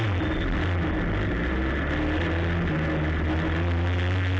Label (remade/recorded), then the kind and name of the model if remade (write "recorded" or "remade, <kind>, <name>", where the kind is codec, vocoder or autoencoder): recorded